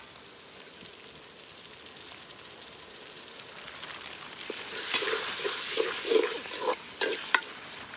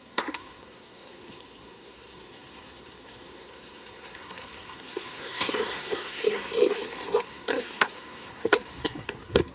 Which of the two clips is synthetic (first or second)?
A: second